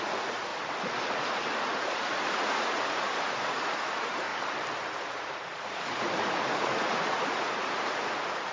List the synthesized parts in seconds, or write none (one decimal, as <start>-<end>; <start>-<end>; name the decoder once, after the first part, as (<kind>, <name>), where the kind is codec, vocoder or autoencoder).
0.0-0.5 (vocoder, Vocos); 1.3-4.3; 5.0-8.5